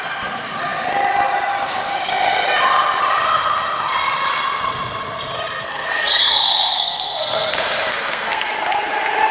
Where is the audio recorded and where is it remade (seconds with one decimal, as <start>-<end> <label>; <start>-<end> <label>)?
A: 0.0-5.6 recorded; 5.6-7.5 remade; 7.5-7.9 recorded; 7.9-8.4 remade; 8.4-9.3 recorded